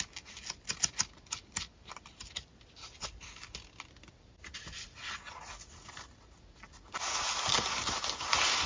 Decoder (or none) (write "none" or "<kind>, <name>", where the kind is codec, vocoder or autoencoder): none